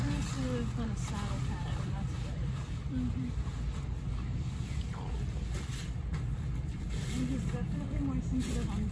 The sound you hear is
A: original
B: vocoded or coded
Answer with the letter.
A